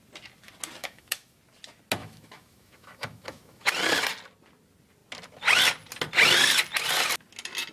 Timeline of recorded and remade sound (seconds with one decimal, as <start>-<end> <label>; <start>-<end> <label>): 0.0-0.8 recorded; 0.8-1.4 remade; 1.4-2.0 recorded; 2.0-3.7 remade; 3.7-7.7 recorded